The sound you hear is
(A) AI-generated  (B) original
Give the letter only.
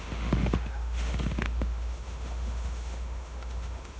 A